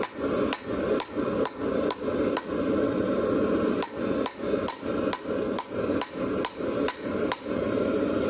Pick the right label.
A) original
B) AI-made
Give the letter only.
A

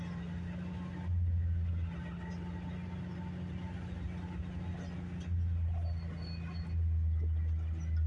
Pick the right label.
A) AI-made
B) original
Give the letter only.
B